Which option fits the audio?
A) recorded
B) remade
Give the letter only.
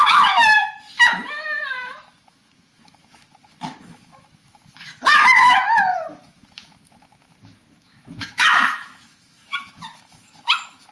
B